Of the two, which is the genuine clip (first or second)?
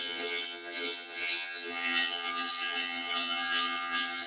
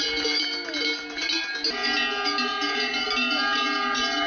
second